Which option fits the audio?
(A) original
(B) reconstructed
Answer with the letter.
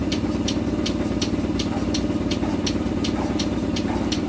A